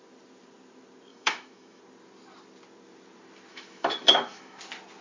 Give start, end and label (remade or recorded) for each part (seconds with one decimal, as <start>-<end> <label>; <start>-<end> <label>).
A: 0.0-1.1 recorded; 1.1-1.8 remade; 1.8-3.5 recorded; 3.5-4.6 remade; 4.6-5.0 recorded